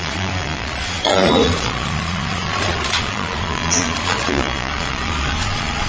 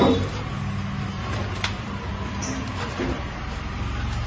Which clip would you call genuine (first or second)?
second